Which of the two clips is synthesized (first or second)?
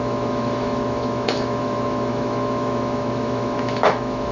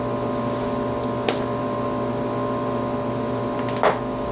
first